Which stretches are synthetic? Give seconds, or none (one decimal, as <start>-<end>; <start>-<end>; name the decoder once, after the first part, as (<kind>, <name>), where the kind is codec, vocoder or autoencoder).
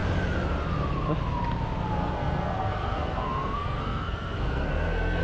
1.9-5.2 (codec, SNAC)